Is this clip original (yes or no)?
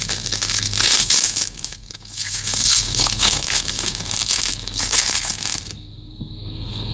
no